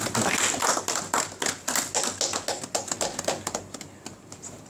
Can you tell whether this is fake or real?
real